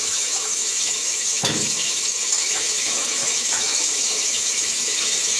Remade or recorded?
remade